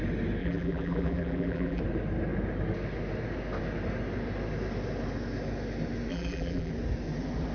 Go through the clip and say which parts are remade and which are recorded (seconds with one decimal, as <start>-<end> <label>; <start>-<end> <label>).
0.0-0.4 recorded; 0.4-1.8 remade; 1.8-6.1 recorded; 6.1-6.7 remade; 6.7-7.5 recorded